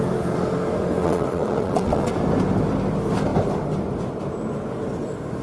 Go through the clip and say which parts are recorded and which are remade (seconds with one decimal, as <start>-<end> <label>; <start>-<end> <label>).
0.0-1.0 recorded; 1.0-2.1 remade; 2.1-5.4 recorded